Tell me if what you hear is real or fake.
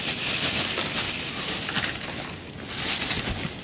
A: real